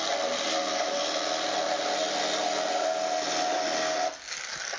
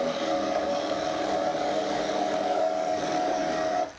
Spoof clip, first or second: second